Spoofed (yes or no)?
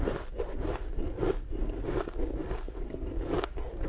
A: no